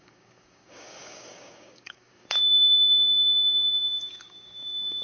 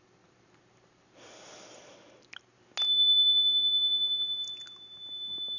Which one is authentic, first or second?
second